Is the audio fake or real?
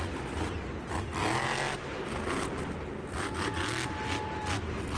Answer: real